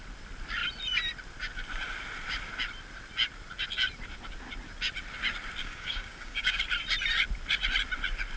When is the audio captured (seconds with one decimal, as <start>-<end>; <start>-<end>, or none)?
0.0-5.6; 6.6-8.4

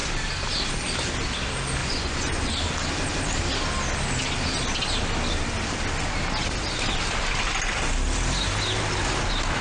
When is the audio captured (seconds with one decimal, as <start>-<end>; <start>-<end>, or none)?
0.0-1.8; 2.5-9.6

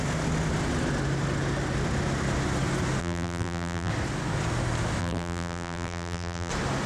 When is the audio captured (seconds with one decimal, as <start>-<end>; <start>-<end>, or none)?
0.0-3.0; 3.9-5.0; 6.5-6.9

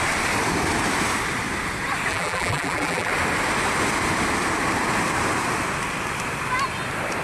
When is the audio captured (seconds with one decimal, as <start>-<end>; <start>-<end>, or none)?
0.0-2.1; 3.1-7.2

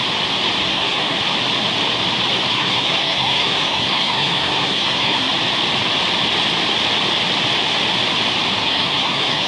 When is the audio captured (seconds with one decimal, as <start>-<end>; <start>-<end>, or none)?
0.0-0.6; 1.2-2.5; 5.3-8.6

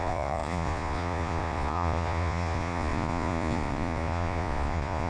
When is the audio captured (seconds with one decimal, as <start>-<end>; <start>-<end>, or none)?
none

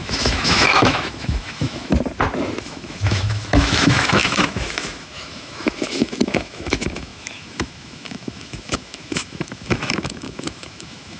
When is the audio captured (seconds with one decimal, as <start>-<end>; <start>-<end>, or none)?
1.9-2.6